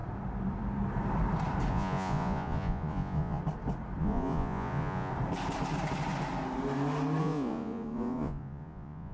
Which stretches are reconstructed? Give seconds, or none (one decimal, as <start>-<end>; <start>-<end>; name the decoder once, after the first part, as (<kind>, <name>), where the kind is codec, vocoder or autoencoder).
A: 1.7-3.4 (vocoder, Vocos); 4.0-5.1; 7.2-9.1